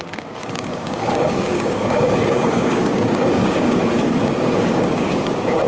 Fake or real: fake